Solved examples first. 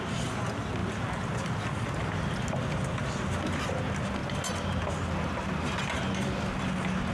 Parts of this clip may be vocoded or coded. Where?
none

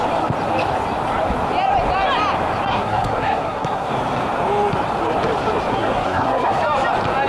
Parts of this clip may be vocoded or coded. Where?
2.7-3.9 (codec, SNAC); 5.7-6.6